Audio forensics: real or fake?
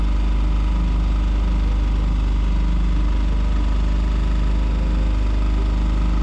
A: real